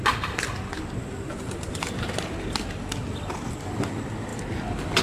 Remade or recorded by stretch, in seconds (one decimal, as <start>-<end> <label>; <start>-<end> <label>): 0.0-5.0 recorded